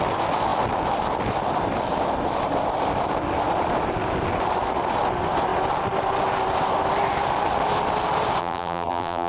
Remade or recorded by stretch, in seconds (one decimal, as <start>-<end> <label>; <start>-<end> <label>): 0.0-8.4 recorded; 8.4-9.3 remade